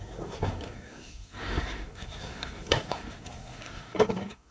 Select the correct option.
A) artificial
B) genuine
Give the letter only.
A